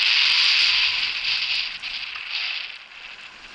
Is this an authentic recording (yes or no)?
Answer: yes